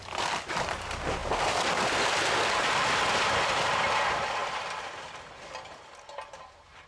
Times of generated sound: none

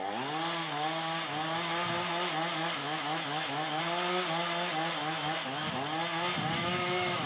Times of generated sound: 2.8-3.8 (autoencoder, DAC-VAE); 5.0-5.7; 6.6-7.3

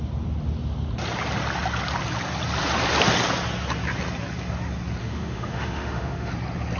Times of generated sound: 5.0-6.3 (autoencoder, DAC-VAE)

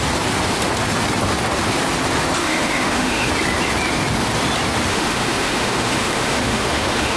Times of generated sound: 2.4-3.3 (autoencoder, DAC-VAE); 4.9-7.2

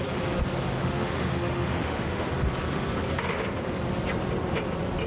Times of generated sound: 0.8-2.3 (autoencoder, DAC-VAE)

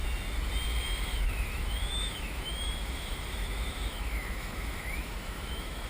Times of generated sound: 0.8-5.9 (autoencoder, DAC-VAE)

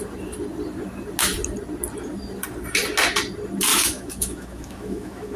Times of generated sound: 3.7-5.4 (autoencoder, DAC-VAE)